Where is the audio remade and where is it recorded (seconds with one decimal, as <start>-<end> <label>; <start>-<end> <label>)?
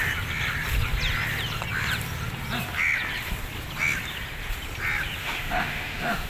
0.0-5.2 recorded; 5.2-6.3 remade